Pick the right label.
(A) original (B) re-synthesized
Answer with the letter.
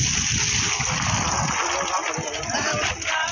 A